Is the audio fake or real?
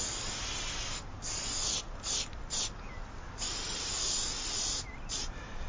real